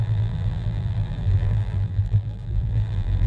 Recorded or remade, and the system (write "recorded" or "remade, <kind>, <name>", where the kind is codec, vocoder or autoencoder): remade, vocoder, BigVGAN v2